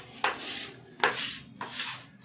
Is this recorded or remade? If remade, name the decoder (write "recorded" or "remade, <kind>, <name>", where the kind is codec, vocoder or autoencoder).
recorded